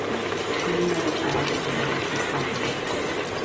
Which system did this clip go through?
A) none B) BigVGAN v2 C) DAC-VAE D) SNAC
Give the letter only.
A